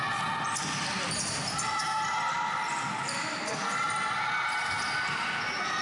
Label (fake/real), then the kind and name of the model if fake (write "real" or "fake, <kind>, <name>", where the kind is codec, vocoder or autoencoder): real